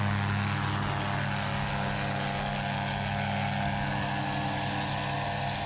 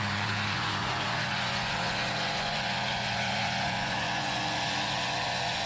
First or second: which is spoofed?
second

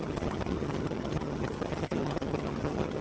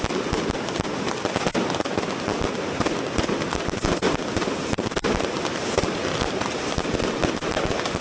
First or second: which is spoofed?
first